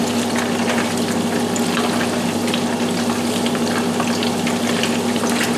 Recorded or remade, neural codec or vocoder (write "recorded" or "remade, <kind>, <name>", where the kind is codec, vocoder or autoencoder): recorded